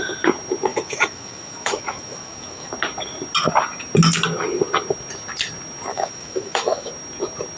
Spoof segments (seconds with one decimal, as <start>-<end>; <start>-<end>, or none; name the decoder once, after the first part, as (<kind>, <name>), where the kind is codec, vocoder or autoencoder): 0.7-2.7 (autoencoder, DAC-VAE); 5.9-6.9